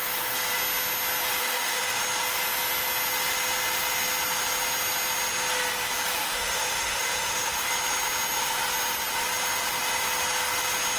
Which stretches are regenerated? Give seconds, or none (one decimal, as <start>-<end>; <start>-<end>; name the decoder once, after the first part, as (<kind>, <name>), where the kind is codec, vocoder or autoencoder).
1.4-2.0 (autoencoder, DAC-VAE); 6.2-7.7